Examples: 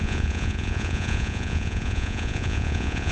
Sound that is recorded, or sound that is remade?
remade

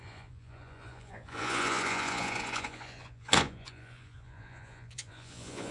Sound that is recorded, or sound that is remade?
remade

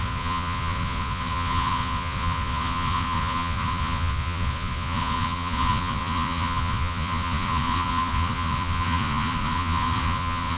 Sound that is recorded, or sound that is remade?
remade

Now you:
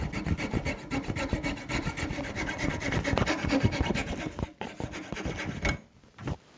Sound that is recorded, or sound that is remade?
recorded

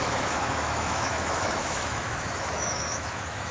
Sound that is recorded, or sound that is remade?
remade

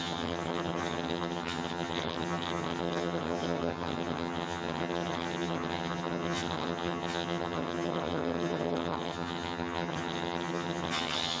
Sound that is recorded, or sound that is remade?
remade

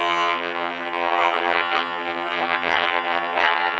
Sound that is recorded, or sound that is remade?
remade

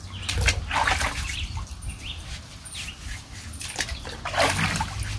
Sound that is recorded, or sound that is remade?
recorded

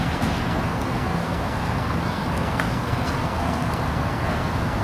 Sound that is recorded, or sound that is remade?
remade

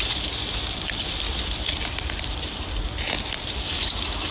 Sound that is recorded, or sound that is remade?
remade